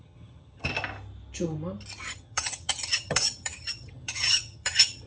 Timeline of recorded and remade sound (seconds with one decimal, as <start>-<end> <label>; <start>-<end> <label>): 0.0-0.7 remade; 0.7-2.0 recorded; 2.0-5.1 remade